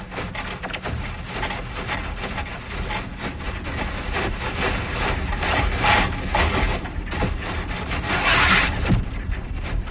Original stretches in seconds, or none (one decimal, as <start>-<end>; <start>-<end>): 0.0-9.9